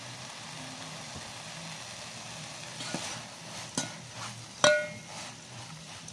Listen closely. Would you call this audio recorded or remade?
recorded